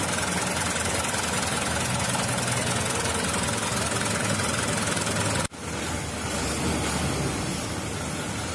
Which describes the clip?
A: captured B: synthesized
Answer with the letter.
A